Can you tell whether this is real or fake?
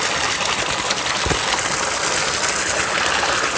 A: real